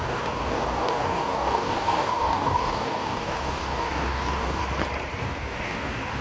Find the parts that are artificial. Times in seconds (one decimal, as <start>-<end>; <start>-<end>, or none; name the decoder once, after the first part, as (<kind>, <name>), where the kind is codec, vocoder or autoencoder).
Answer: 0.0-4.6 (codec, DAC); 5.2-6.2